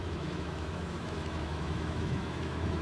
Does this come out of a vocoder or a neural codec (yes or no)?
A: yes